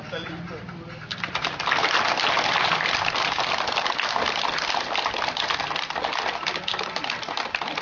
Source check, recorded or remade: recorded